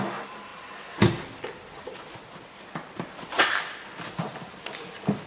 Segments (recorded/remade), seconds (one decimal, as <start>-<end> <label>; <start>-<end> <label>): 0.0-5.3 recorded